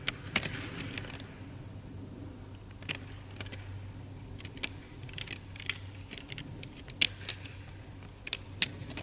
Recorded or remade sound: recorded